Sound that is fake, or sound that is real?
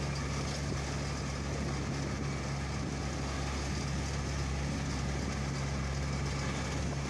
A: real